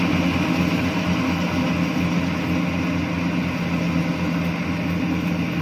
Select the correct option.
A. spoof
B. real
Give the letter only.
B